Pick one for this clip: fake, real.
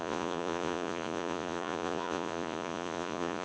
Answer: fake